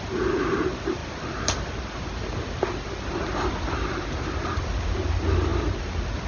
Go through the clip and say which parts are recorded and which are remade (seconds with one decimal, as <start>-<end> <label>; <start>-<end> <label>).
0.0-6.3 recorded